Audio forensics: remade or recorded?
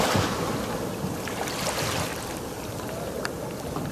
recorded